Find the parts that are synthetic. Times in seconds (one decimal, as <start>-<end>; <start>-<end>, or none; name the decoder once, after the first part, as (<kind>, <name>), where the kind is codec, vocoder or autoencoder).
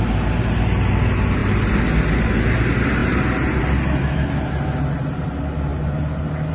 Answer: none